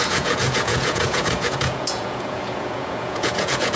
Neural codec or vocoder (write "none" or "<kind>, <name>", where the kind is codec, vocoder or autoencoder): vocoder, Vocos